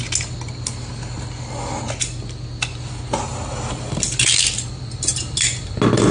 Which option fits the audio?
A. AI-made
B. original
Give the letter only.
B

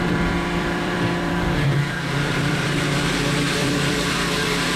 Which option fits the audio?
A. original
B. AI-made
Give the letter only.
B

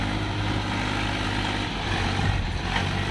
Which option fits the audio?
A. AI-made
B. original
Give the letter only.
B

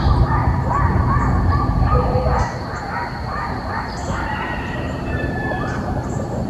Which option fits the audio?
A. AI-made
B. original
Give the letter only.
A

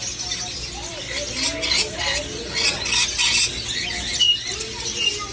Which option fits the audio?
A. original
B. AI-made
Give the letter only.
A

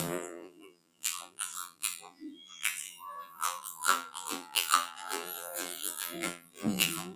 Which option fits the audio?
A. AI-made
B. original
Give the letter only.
A